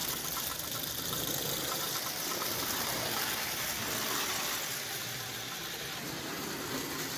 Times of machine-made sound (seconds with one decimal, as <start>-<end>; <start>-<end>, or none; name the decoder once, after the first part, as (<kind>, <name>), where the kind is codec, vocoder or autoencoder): 0.0-4.3 (vocoder, BigVGAN v2)